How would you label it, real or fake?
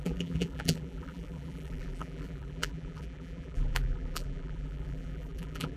fake